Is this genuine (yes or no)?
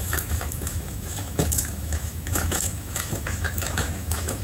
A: no